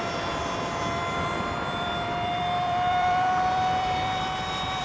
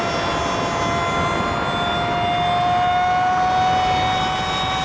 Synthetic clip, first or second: first